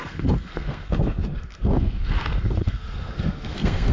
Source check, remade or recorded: remade